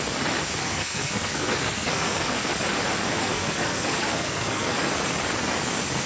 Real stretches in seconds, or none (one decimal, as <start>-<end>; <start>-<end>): 0.0-0.6; 2.5-3.2; 4.9-6.1